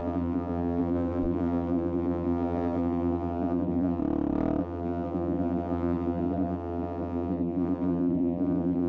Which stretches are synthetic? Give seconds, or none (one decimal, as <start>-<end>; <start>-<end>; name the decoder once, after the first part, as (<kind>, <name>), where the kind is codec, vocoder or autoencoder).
0.0-4.0 (vocoder, BigVGAN v2); 4.6-8.9